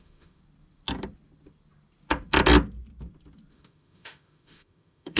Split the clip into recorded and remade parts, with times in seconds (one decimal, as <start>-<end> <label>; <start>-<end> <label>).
0.0-0.4 remade; 0.4-3.5 recorded; 3.5-5.2 remade